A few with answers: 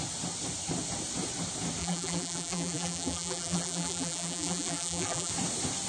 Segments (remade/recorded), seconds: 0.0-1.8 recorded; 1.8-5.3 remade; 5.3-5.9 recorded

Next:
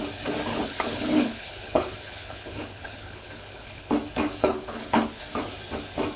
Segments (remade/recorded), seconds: 0.0-0.5 recorded; 0.5-3.9 remade; 3.9-4.4 recorded; 4.4-5.2 remade; 5.2-6.2 recorded

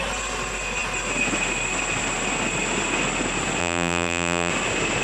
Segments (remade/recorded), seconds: 0.0-3.6 recorded; 3.6-4.5 remade; 4.5-5.0 recorded

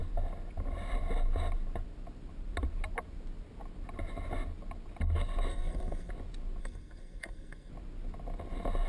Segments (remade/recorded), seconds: 0.0-5.5 recorded; 5.5-6.1 remade; 6.1-6.6 recorded; 6.6-7.7 remade; 7.7-8.9 recorded